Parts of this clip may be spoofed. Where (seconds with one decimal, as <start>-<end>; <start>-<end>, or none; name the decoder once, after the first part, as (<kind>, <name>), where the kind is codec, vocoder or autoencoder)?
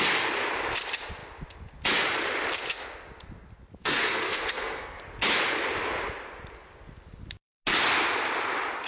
3.8-5.0 (codec, SNAC)